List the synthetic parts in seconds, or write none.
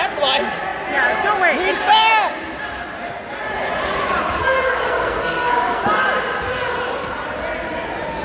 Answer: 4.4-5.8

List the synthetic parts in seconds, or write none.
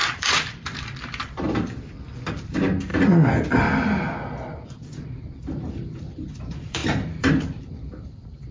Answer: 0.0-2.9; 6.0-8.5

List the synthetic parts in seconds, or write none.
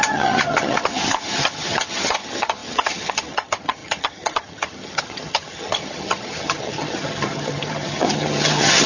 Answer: 0.0-8.9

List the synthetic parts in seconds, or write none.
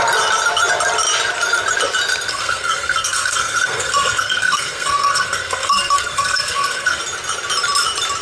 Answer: 2.3-7.0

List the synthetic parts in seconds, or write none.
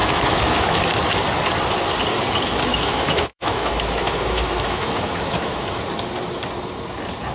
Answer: 0.0-0.8; 2.7-5.8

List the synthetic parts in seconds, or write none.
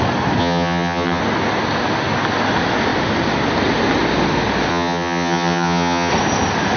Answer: 0.4-1.2; 4.7-6.1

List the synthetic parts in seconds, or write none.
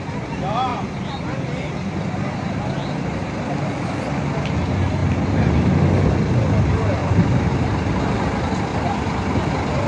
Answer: 7.0-7.9; 8.7-9.3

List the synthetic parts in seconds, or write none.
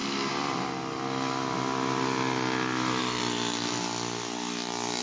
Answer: none